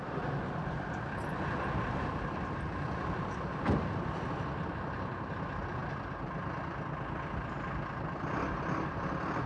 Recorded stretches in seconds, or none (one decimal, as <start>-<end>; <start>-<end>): 0.0-9.5